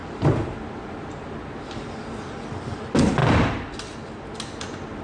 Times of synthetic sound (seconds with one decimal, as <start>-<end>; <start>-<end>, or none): none